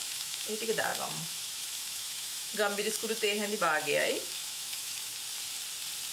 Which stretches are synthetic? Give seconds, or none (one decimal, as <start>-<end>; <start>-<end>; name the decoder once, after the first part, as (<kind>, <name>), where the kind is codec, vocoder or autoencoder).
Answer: 0.0-5.1 (autoencoder, DAC-VAE)